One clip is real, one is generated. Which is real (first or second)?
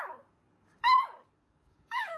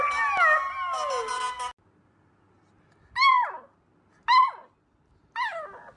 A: second